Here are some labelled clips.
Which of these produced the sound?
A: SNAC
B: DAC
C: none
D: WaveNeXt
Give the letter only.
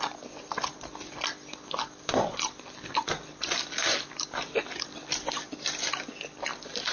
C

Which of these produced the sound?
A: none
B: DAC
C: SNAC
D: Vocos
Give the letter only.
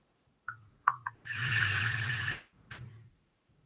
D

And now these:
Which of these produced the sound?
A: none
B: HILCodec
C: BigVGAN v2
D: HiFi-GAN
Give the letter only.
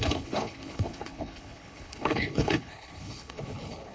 B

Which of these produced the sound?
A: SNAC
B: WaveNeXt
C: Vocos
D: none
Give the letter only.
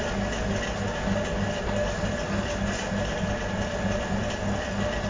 D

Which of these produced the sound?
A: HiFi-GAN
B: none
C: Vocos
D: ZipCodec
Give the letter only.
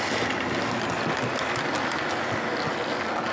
B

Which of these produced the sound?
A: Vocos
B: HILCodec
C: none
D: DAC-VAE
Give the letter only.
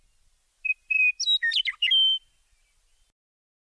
C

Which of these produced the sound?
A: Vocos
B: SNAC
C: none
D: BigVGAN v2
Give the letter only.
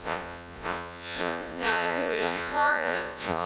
A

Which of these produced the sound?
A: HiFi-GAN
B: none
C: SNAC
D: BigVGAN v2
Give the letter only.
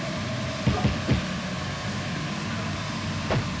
B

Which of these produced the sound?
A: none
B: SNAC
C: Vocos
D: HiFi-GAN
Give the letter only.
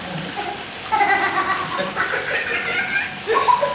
A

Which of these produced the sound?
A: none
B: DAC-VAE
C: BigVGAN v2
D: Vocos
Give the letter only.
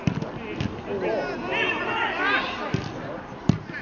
A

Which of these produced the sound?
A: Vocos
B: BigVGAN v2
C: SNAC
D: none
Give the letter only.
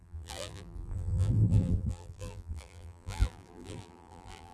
B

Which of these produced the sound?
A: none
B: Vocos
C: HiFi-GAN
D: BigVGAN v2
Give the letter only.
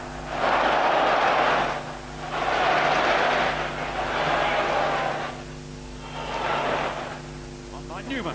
A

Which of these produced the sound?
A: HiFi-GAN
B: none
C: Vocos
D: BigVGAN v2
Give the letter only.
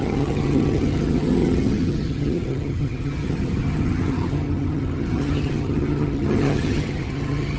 A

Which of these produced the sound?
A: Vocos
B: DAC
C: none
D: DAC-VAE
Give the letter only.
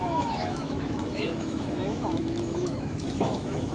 D